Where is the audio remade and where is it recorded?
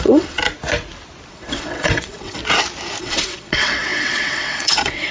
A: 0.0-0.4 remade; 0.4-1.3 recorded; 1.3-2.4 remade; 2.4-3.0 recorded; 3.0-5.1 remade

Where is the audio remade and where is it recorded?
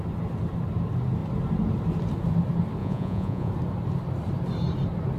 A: 0.0-2.8 recorded; 2.8-3.5 remade; 3.5-5.2 recorded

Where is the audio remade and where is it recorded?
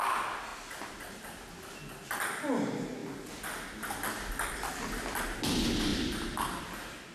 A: 0.0-5.9 recorded; 5.9-6.6 remade; 6.6-7.1 recorded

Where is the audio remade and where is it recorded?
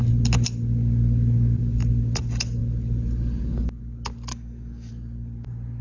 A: 0.0-4.3 recorded; 4.3-4.9 remade; 4.9-5.8 recorded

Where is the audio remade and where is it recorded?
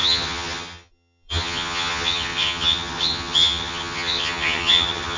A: 0.0-5.2 remade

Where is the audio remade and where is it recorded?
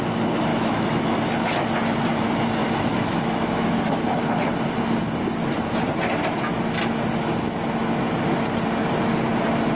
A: 0.0-0.5 recorded; 0.5-1.2 remade; 1.2-2.6 recorded; 2.6-4.2 remade; 4.2-9.8 recorded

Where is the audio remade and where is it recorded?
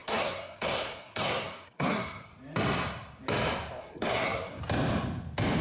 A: 0.0-2.3 remade; 2.3-3.8 recorded; 3.8-4.6 remade; 4.6-5.6 recorded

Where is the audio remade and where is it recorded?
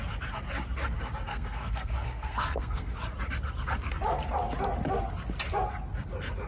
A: 0.0-1.3 recorded; 1.3-2.9 remade; 2.9-6.5 recorded